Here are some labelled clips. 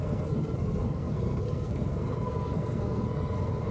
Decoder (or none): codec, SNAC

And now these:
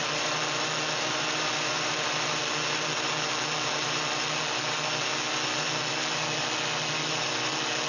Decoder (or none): none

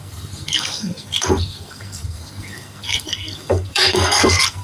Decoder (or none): codec, SNAC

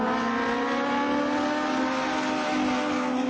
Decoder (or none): none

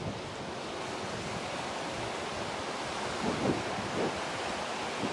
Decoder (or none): none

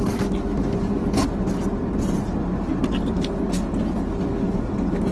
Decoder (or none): none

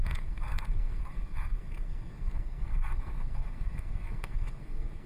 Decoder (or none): codec, SNAC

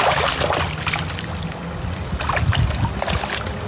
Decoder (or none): none